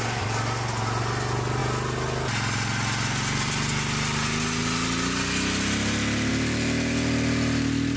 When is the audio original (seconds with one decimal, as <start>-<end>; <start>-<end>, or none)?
0.0-8.0